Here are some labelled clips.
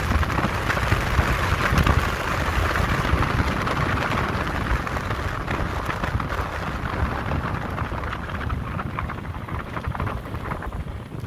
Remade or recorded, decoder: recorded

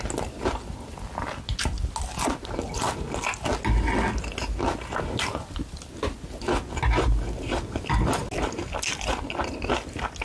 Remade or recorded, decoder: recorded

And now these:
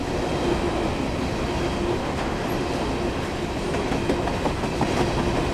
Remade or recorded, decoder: recorded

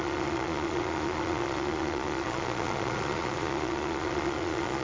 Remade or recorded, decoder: remade, vocoder, Vocos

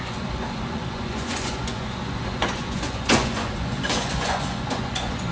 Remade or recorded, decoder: remade, vocoder, Vocos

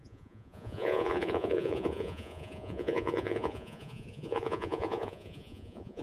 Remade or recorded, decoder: remade, vocoder, Vocos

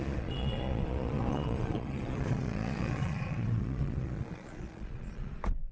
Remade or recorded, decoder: remade, vocoder, Vocos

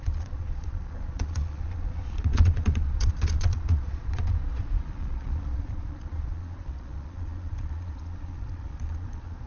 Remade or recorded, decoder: remade, vocoder, Vocos